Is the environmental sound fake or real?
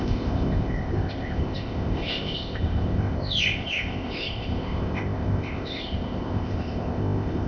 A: fake